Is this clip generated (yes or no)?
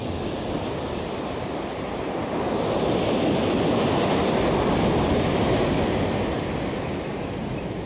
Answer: no